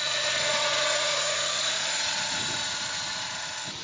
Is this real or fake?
fake